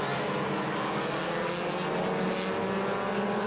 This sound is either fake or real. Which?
real